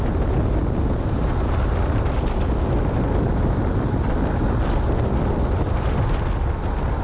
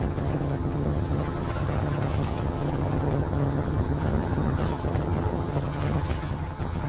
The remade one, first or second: second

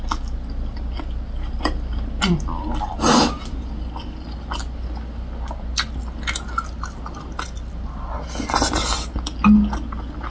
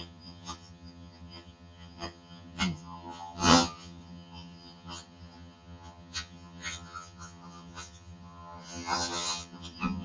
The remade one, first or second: second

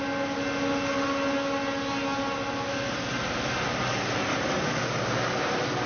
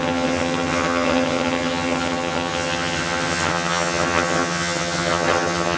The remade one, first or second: second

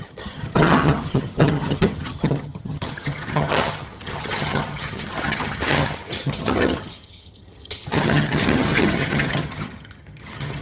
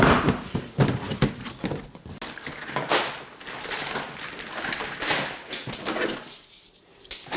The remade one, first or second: first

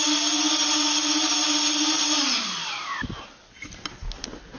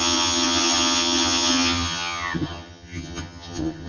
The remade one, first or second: second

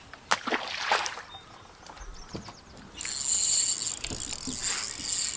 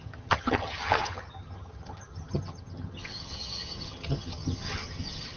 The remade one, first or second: second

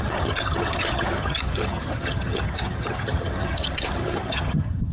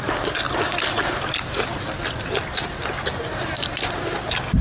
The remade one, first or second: first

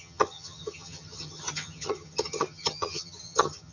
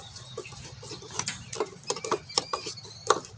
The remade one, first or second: first